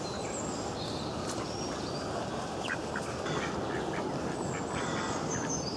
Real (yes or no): yes